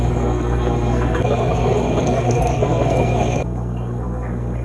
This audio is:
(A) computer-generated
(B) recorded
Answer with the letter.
A